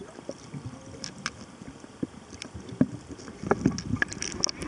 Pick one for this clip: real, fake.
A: real